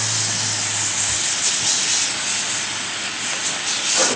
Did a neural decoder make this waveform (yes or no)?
no